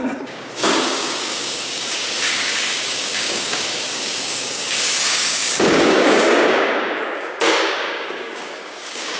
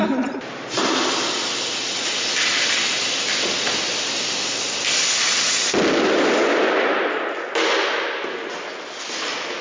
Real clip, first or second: second